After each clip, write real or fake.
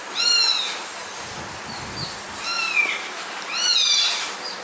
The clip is real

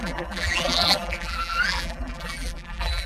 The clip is fake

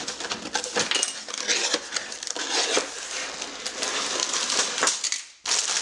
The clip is real